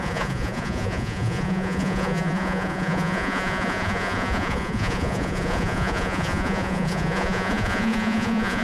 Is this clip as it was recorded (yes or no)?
no